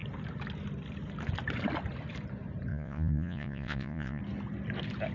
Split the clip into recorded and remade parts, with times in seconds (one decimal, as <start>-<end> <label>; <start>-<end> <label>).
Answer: 0.0-2.7 recorded; 2.7-4.2 remade; 4.2-5.1 recorded

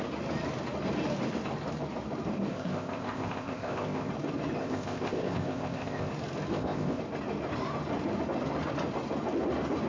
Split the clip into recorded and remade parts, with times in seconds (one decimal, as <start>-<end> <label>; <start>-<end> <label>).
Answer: 0.0-2.5 recorded; 2.5-4.1 remade; 4.1-4.6 recorded; 4.6-6.1 remade; 6.1-6.5 recorded; 6.5-7.0 remade; 7.0-9.9 recorded